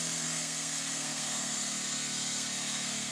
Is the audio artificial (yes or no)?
yes